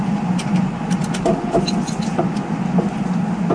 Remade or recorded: recorded